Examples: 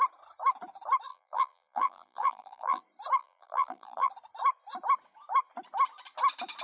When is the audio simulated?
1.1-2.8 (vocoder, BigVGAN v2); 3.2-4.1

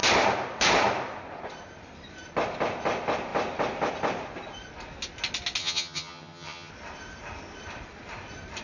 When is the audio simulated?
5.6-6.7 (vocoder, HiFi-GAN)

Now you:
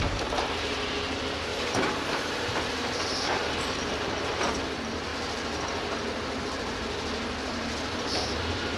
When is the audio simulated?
0.0-5.1 (vocoder, BigVGAN v2); 6.5-8.8

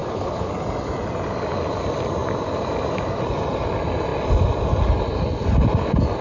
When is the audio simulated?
0.0-0.5 (codec, HILCodec)

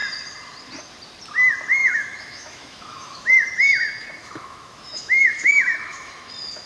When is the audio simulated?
1.8-3.3 (autoencoder, DAC-VAE); 4.2-6.3